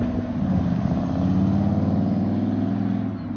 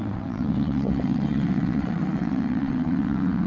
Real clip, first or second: first